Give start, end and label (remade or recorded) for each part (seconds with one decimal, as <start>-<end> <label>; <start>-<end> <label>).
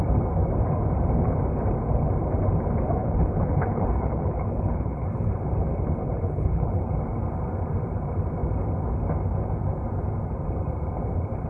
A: 0.0-3.0 recorded; 3.0-5.3 remade; 5.3-6.0 recorded; 6.0-6.8 remade; 6.8-11.5 recorded